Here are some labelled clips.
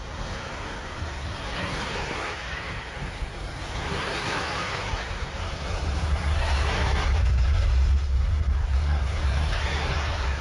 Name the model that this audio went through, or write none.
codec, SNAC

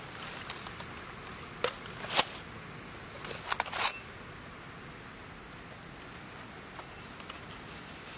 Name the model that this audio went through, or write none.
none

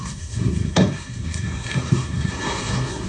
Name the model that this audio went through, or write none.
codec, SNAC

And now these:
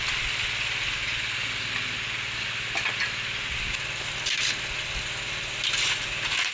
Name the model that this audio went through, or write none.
none